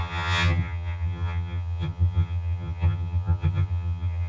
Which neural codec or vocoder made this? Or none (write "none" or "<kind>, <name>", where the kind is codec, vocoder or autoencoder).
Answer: vocoder, HiFi-GAN